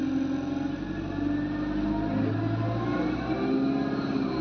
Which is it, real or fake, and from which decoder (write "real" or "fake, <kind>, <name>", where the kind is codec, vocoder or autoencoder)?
real